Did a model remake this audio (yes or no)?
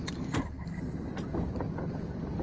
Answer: no